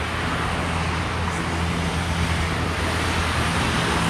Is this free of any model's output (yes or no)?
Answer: yes